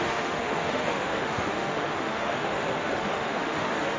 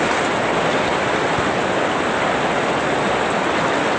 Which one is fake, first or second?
first